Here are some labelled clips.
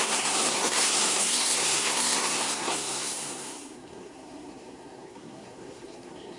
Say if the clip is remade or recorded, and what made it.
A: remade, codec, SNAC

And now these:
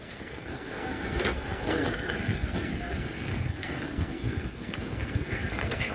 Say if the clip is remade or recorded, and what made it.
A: remade, codec, SNAC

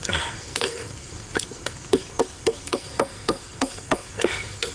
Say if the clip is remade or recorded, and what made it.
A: remade, codec, SNAC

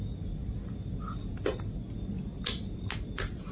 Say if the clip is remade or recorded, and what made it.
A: recorded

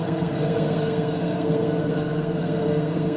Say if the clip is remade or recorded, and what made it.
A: remade, codec, SNAC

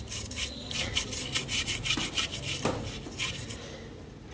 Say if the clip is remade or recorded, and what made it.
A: recorded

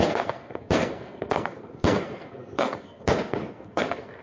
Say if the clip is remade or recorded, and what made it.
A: remade, codec, SNAC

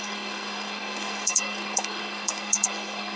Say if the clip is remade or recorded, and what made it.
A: remade, codec, SNAC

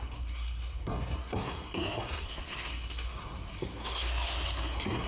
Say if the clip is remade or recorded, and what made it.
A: remade, codec, SNAC